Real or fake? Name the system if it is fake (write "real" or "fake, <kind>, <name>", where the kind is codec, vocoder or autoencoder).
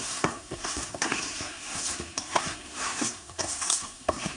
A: fake, codec, SNAC